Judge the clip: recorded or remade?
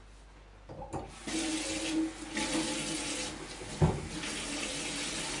recorded